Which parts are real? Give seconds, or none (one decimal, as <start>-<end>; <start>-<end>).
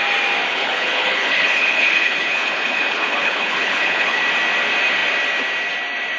0.0-0.5; 4.2-6.2